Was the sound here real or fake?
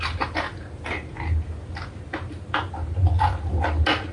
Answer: real